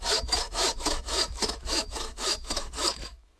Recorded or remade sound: remade